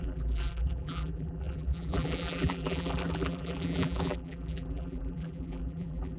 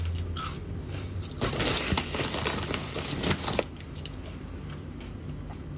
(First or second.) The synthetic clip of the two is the first